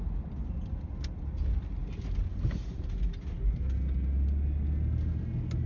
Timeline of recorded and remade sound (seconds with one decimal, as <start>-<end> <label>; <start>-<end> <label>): 0.0-5.7 recorded